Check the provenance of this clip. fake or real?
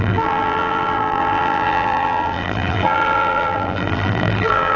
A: fake